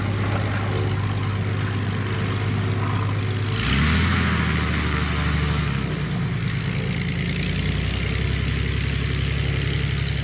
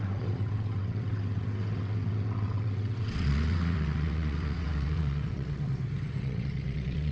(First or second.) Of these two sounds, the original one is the first